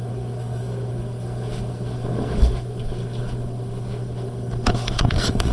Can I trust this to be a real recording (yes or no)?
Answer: no